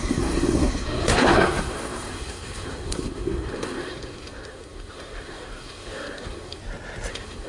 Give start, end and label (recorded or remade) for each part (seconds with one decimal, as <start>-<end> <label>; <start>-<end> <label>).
0.0-6.6 remade; 6.6-7.1 recorded; 7.1-7.5 remade